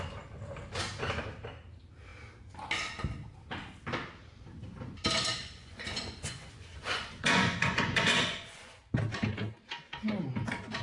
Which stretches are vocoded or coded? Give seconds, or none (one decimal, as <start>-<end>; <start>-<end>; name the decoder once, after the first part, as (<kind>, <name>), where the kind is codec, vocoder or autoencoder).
5.4-8.8 (vocoder, Vocos)